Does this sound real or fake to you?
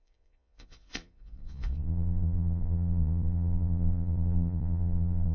fake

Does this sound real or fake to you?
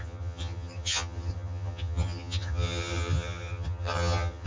fake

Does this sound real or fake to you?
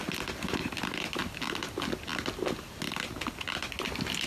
real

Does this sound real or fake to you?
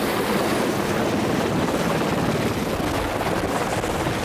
real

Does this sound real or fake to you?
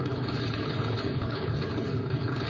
fake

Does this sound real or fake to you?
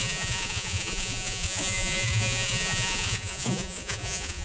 fake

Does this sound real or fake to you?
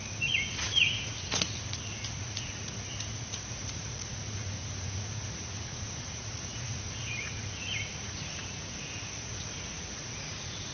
fake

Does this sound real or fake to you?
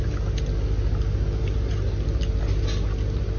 real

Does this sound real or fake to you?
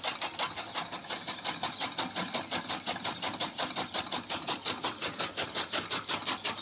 real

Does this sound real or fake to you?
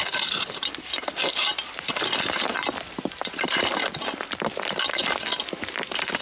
fake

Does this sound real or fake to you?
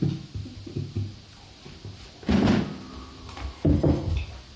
real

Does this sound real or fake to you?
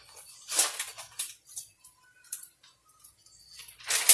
real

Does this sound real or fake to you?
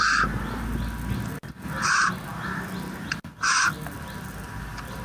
real